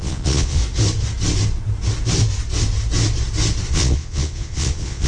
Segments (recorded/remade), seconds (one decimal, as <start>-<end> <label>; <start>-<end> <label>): 0.0-0.6 remade; 0.6-3.7 recorded; 3.7-5.1 remade